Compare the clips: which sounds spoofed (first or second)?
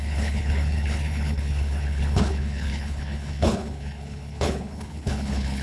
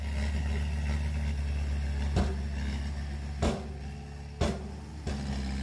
first